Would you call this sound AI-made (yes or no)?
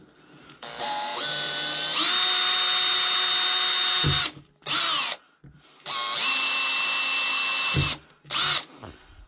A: no